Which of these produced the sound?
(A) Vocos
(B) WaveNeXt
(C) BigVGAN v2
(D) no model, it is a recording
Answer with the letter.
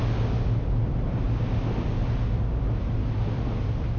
D